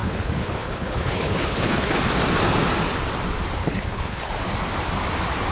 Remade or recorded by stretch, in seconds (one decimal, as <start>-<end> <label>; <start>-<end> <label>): 0.0-2.0 remade; 2.0-3.6 recorded; 3.6-4.3 remade; 4.3-5.5 recorded